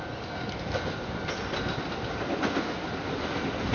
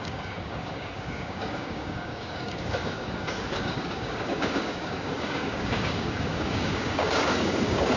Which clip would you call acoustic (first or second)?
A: first